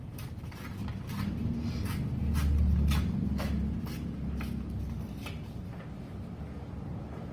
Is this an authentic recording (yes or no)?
yes